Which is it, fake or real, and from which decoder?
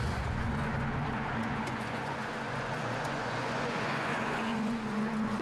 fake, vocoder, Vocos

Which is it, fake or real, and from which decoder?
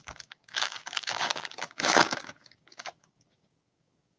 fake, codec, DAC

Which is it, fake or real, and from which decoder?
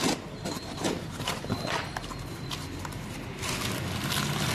real